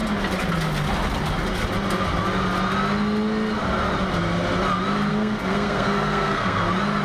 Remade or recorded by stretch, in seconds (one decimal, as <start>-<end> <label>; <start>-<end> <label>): 0.0-5.1 recorded; 5.1-6.6 remade; 6.6-7.0 recorded